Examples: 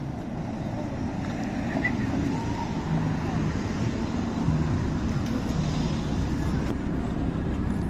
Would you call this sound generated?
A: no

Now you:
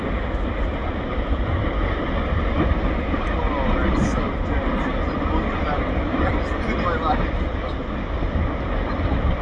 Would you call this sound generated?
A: no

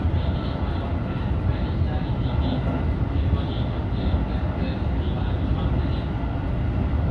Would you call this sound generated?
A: no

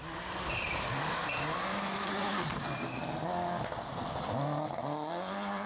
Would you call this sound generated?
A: no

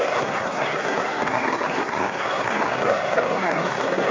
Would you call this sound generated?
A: yes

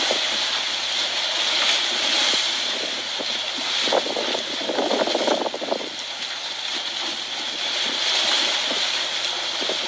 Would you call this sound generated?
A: no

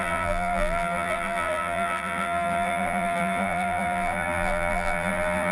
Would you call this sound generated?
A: yes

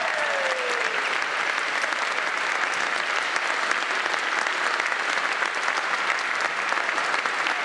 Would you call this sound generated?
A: no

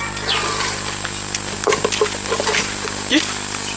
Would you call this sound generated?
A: no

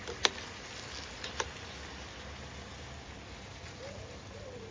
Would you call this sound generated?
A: no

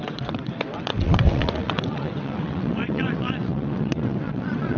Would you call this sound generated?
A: yes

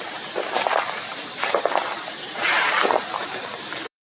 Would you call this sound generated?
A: yes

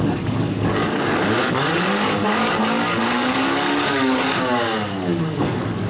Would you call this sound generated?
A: yes